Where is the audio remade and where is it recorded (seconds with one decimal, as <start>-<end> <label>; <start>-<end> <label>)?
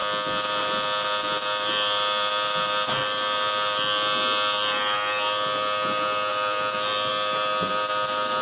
0.0-8.4 recorded